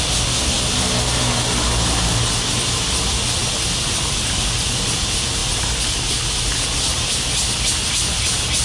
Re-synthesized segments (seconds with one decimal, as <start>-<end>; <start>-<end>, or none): none